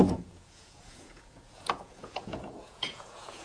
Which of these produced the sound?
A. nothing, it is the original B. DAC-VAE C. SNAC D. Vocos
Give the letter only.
D